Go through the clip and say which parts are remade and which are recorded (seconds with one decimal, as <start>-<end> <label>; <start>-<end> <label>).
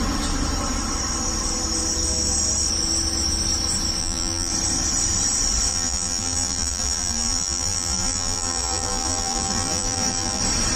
0.0-4.0 recorded; 4.0-4.5 remade; 4.5-5.7 recorded; 5.7-10.4 remade; 10.4-10.8 recorded